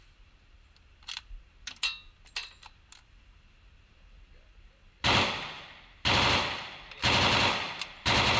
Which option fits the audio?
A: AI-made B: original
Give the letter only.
B